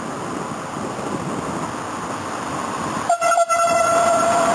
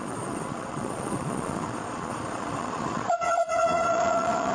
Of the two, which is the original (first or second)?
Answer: first